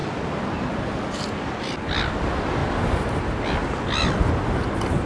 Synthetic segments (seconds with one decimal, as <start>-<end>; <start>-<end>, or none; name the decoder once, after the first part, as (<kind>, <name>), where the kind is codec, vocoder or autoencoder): none